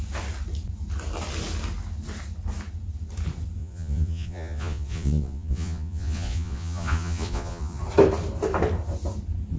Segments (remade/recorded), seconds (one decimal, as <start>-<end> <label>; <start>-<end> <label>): 0.0-3.6 recorded; 3.6-7.8 remade; 7.8-9.6 recorded